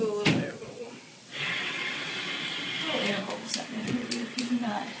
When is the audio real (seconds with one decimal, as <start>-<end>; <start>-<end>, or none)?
0.0-0.5; 2.1-3.8